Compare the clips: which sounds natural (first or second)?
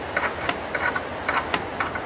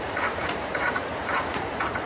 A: first